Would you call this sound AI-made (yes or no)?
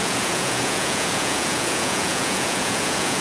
yes